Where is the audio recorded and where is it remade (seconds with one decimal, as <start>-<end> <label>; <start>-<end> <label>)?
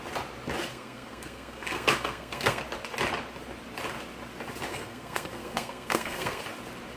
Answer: 0.0-0.7 recorded; 0.7-2.6 remade; 2.6-4.7 recorded; 4.7-6.4 remade; 6.4-7.0 recorded